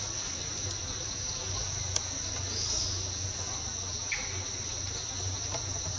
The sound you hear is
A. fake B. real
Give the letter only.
B